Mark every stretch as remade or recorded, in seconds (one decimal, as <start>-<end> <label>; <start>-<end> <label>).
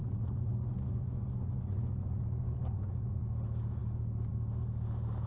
0.0-3.2 remade; 3.2-5.3 recorded